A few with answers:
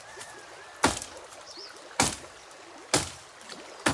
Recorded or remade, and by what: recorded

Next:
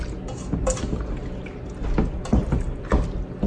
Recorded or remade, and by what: recorded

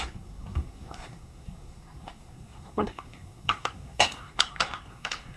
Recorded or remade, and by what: remade, codec, SNAC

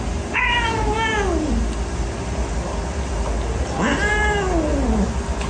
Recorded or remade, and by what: recorded